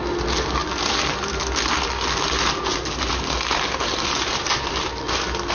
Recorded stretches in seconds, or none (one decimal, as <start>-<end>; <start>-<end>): 0.0-5.5